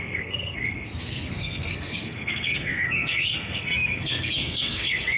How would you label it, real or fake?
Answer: fake